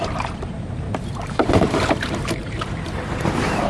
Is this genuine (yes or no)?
no